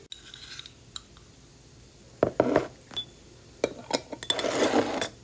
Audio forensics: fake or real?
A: real